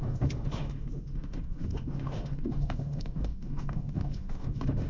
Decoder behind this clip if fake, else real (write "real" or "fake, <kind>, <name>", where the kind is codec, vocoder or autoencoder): fake, autoencoder, DAC-VAE